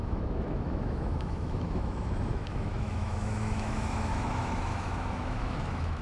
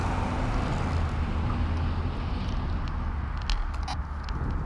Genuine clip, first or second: second